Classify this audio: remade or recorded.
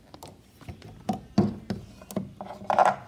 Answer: recorded